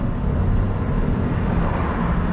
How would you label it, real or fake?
real